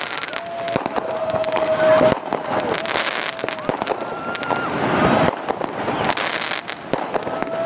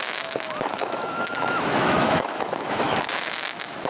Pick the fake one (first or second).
second